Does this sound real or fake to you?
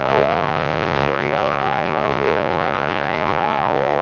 fake